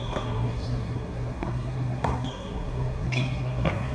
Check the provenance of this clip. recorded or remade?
remade